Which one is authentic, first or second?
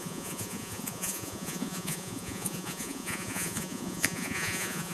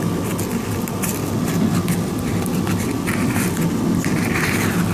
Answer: second